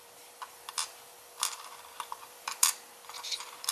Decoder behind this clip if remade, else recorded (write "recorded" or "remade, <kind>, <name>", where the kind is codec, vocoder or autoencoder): remade, vocoder, BigVGAN v2